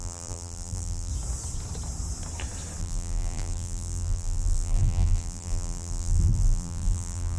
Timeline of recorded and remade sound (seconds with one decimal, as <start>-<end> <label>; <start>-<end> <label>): 0.0-1.1 remade; 1.1-2.8 recorded; 2.8-7.4 remade